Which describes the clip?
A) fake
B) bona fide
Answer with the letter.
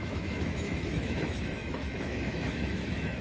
A